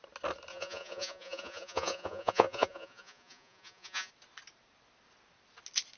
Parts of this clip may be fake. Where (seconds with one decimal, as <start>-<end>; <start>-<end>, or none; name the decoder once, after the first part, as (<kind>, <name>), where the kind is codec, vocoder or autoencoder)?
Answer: 0.5-4.1 (vocoder, Vocos)